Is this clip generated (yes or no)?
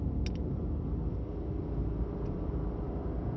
no